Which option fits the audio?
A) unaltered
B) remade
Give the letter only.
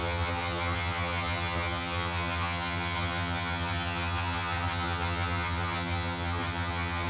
B